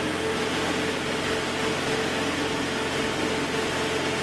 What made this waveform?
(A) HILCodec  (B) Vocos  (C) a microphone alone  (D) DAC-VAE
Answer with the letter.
C